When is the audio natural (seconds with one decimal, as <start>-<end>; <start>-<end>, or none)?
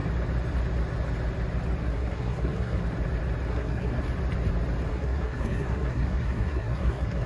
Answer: 0.0-1.8; 2.8-3.5; 4.0-4.9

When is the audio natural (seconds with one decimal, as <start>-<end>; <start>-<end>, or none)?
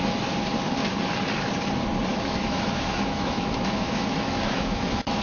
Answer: 0.0-2.1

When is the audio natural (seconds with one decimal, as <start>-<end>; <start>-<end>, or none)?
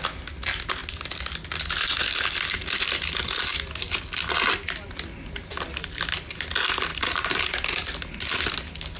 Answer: 0.0-6.9; 7.5-9.0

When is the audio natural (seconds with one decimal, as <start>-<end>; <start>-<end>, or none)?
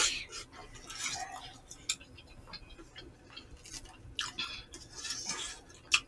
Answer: 0.0-6.1